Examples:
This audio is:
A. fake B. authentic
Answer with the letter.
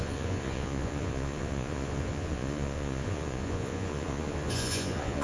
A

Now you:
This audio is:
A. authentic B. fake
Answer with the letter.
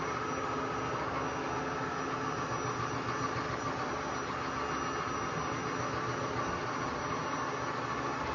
A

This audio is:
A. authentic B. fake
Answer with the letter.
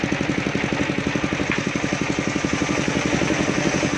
A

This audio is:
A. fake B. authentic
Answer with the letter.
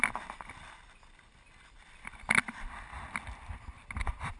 B